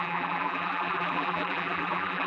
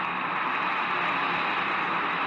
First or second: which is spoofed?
first